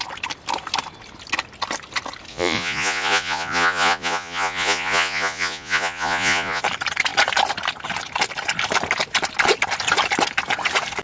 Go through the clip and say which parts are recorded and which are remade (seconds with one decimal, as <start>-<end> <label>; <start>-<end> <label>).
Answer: 0.0-2.3 recorded; 2.3-6.6 remade; 6.6-11.0 recorded